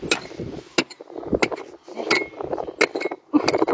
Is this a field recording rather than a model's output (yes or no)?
yes